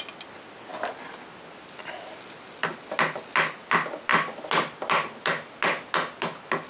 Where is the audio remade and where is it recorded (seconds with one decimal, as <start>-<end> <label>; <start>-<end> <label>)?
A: 0.0-6.7 recorded